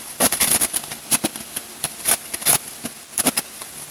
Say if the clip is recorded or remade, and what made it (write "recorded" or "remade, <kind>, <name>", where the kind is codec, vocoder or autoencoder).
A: remade, vocoder, BigVGAN v2